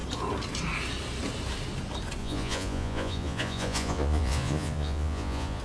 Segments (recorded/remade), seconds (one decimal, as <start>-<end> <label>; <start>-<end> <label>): 0.0-2.2 recorded; 2.2-5.6 remade